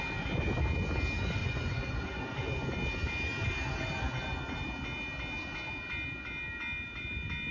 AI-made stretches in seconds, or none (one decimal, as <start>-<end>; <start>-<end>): 1.4-2.2